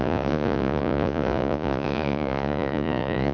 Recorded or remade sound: remade